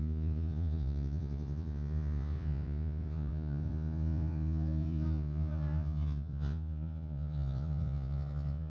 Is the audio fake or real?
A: fake